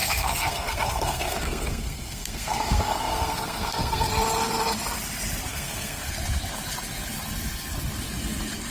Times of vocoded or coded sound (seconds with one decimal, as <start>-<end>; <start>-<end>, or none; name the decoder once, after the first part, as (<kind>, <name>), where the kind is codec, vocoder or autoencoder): 0.0-4.1 (codec, SNAC); 5.5-6.1